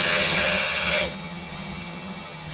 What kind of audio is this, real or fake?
fake